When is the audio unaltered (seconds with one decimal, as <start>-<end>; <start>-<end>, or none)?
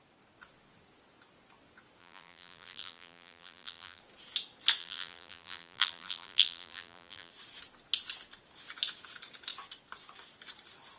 0.0-2.0; 4.0-4.8; 7.3-11.0